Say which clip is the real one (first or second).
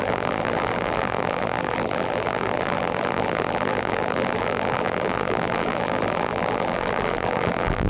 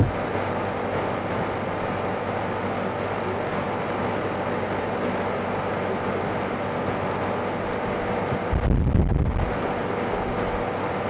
second